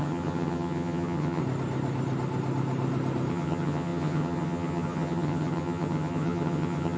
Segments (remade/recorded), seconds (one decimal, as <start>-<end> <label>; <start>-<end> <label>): 0.0-1.4 remade; 1.4-3.3 recorded; 3.3-7.0 remade